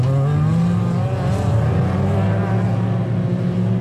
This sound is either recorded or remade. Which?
recorded